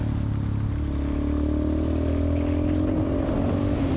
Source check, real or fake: real